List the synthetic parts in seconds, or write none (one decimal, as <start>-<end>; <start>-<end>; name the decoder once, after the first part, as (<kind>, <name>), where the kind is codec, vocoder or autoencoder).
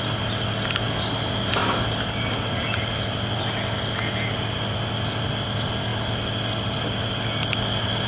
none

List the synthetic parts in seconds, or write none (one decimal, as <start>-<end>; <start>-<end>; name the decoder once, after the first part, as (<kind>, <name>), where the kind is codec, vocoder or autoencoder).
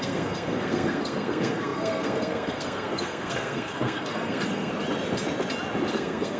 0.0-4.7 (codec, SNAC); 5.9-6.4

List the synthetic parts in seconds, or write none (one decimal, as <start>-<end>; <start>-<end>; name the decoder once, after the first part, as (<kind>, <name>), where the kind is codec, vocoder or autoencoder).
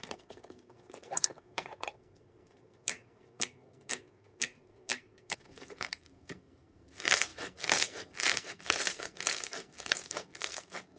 0.0-11.0 (codec, SNAC)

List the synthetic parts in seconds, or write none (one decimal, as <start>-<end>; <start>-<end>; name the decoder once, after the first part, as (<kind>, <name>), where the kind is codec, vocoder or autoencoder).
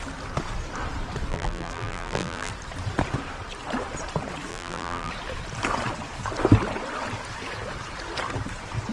1.3-2.5 (vocoder, BigVGAN v2); 4.5-5.1